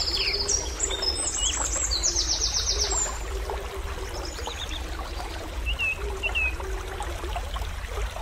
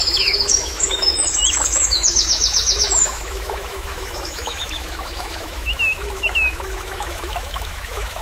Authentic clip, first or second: first